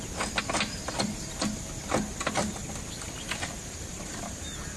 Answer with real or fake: real